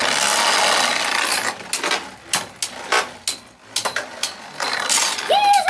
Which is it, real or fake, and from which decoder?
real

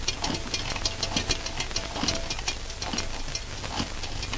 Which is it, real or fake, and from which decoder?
real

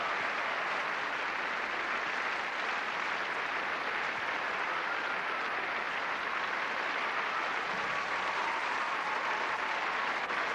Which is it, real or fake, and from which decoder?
real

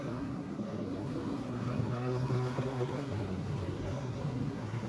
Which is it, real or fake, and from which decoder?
fake, codec, SNAC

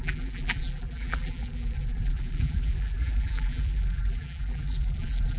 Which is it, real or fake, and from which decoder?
fake, vocoder, BigVGAN v2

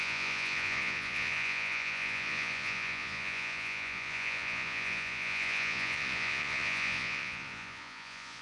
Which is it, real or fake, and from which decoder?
fake, vocoder, Vocos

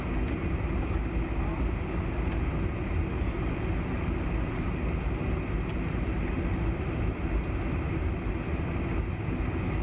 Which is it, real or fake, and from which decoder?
real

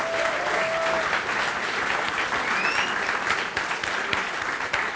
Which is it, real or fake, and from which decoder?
real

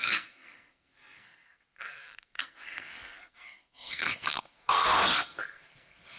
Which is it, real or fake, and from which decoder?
fake, codec, SNAC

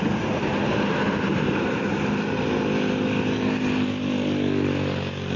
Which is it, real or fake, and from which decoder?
real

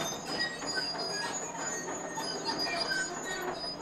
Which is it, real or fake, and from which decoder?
real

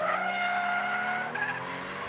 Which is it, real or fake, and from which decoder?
real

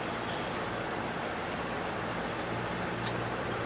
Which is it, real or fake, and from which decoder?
fake, vocoder, BigVGAN v2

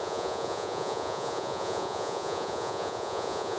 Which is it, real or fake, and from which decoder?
fake, vocoder, Vocos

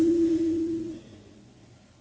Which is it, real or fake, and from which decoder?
fake, vocoder, Vocos